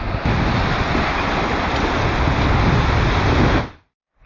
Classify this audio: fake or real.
real